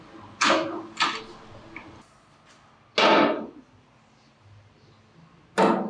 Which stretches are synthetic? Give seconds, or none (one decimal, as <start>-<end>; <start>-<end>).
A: none